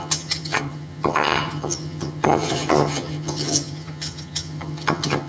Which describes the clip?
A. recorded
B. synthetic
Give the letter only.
B